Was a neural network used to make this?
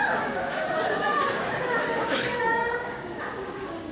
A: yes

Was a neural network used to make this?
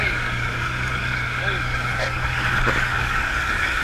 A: yes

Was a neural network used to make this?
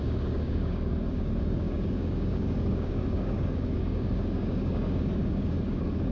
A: yes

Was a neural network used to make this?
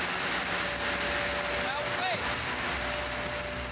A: no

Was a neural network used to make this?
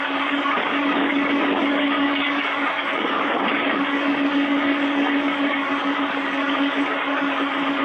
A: yes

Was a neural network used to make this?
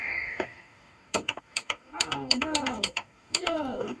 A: yes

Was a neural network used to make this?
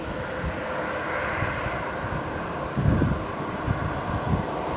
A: no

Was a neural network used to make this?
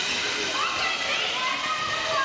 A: no